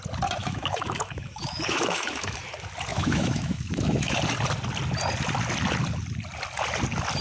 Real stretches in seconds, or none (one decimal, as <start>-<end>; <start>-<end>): 0.0-0.4; 2.4-2.9; 4.2-7.2